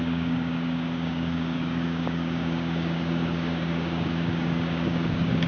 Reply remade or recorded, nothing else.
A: remade